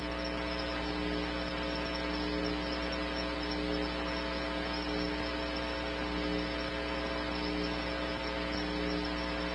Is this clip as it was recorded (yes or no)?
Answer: yes